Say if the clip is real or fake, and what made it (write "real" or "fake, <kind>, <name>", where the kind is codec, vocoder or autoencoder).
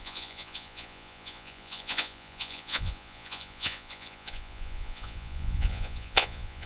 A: fake, vocoder, Vocos